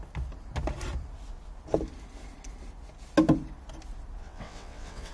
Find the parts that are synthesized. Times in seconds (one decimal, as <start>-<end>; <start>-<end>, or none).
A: 4.2-5.1